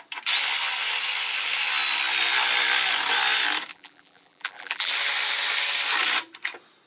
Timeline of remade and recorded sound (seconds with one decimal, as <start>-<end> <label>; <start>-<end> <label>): 0.0-3.7 recorded; 3.7-4.9 remade; 4.9-6.9 recorded